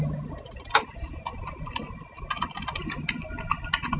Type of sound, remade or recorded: recorded